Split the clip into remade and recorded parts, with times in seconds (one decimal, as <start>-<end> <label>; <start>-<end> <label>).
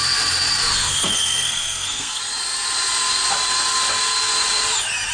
0.0-0.7 recorded; 0.7-2.2 remade; 2.2-5.1 recorded